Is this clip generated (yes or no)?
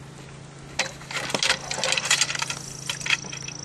no